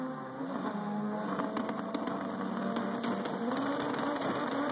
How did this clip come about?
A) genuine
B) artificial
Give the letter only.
A